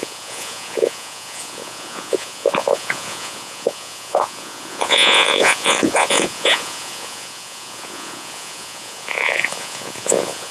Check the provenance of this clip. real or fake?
fake